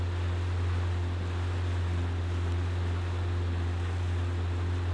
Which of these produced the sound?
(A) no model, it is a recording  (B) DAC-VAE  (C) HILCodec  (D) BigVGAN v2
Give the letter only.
A